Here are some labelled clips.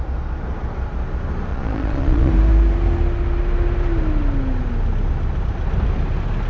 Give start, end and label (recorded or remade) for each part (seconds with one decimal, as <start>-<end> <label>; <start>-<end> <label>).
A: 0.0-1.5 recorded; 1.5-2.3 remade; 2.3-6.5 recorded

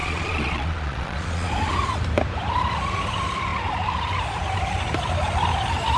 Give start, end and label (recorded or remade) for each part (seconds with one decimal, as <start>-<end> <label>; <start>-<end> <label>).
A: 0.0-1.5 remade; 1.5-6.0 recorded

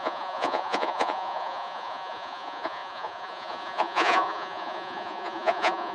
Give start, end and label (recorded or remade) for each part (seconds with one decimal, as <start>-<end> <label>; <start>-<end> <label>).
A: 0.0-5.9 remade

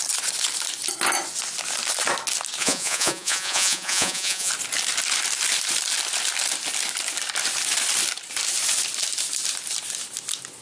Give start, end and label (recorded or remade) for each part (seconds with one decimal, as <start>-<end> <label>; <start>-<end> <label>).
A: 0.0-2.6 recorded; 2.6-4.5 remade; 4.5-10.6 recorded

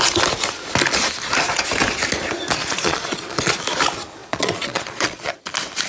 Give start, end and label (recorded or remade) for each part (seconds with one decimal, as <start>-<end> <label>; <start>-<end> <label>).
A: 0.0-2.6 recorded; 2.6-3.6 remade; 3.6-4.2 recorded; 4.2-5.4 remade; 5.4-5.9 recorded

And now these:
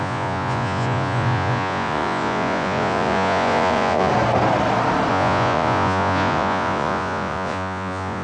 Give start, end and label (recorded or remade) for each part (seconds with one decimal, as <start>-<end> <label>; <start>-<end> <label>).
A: 0.0-4.1 remade; 4.1-5.1 recorded; 5.1-8.2 remade

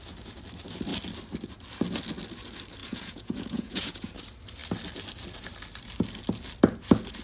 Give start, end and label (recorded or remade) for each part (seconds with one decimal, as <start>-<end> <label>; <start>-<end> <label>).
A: 0.0-2.8 recorded; 2.8-4.1 remade; 4.1-7.2 recorded

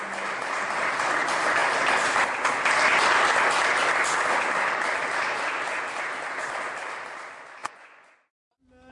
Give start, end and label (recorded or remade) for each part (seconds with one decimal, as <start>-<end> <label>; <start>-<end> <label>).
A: 0.0-7.6 recorded; 7.6-8.1 remade; 8.1-8.9 recorded